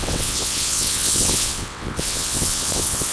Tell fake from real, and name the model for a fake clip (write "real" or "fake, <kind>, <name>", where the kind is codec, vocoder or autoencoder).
fake, vocoder, WaveNeXt